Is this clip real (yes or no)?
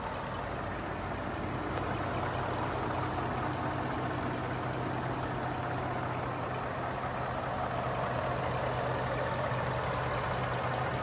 yes